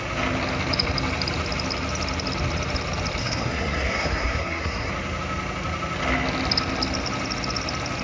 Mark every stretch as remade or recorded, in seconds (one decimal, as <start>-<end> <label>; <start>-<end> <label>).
0.0-3.2 recorded; 3.2-4.9 remade; 4.9-8.0 recorded